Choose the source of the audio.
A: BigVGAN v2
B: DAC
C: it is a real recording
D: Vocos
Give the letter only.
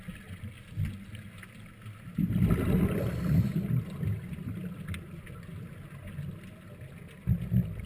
C